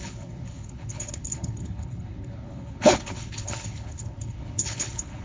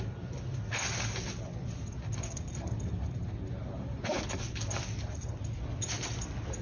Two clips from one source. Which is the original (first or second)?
second